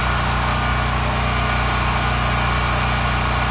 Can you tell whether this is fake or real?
real